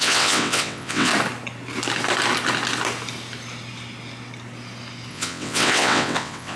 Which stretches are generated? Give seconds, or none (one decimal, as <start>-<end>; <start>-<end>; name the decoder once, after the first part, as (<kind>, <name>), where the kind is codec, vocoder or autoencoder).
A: 0.0-1.1 (vocoder, WaveNeXt); 5.1-6.6